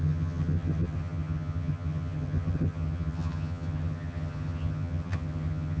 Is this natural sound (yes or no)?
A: no